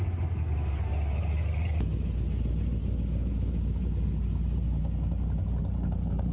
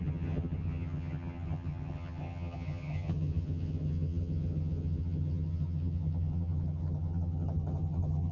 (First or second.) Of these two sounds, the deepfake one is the second